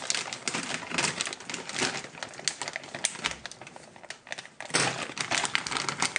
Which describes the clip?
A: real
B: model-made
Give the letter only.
A